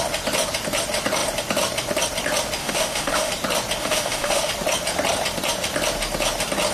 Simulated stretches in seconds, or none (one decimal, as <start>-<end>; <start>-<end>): 2.6-3.3; 3.8-4.5